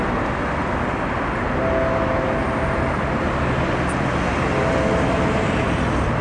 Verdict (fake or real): real